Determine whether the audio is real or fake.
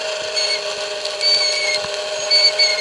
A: real